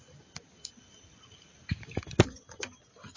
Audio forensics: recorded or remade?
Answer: recorded